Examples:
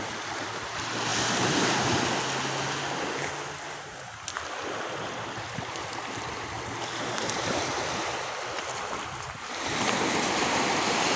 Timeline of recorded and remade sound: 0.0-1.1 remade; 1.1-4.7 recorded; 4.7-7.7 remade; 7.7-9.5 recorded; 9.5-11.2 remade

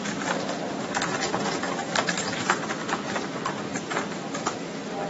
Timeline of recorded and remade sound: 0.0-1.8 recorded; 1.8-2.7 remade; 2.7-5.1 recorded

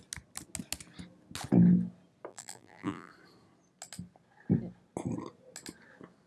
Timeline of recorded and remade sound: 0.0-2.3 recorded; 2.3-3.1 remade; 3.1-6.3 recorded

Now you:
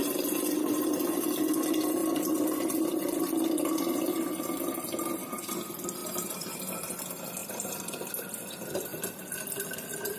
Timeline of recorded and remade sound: 0.0-6.0 recorded; 6.0-6.6 remade; 6.6-7.4 recorded; 7.4-8.1 remade; 8.1-10.2 recorded

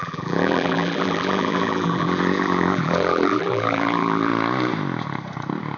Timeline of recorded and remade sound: 0.0-4.3 remade; 4.3-5.8 recorded

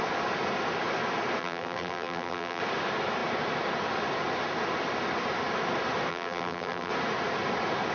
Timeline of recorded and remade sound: 0.0-1.4 recorded; 1.4-2.6 remade; 2.6-6.1 recorded; 6.1-6.9 remade; 6.9-7.9 recorded

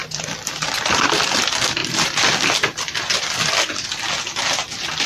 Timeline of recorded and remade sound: 0.0-5.1 recorded